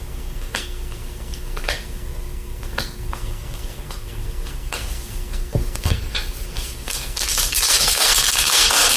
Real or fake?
fake